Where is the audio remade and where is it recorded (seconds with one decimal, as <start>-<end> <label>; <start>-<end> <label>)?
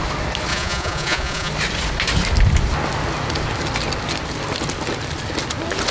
0.0-0.5 recorded; 0.5-1.5 remade; 1.5-5.9 recorded